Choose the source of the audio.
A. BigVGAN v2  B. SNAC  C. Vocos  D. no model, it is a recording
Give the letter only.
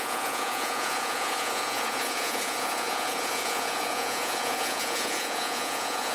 C